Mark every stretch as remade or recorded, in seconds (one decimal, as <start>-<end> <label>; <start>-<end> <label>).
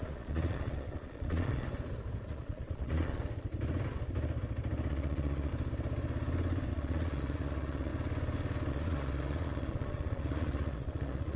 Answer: 0.0-1.7 remade; 1.7-2.3 recorded; 2.3-3.2 remade; 3.2-4.9 recorded; 4.9-5.5 remade; 5.5-6.7 recorded; 6.7-7.9 remade; 7.9-8.7 recorded; 8.7-11.4 remade